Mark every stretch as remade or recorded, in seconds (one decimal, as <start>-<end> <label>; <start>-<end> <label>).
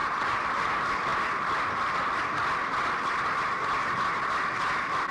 0.0-0.7 remade; 0.7-5.1 recorded